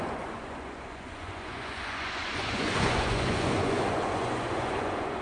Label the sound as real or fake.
fake